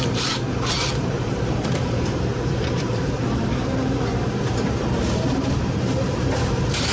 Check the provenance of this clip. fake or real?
fake